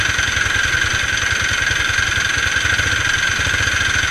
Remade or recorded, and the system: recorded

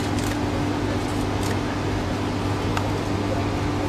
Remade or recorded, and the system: recorded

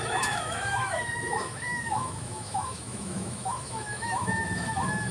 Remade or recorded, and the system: remade, autoencoder, DAC-VAE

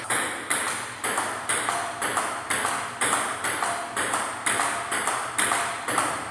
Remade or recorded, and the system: recorded